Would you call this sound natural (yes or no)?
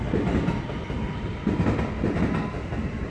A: yes